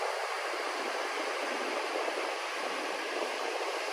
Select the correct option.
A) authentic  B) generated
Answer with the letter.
A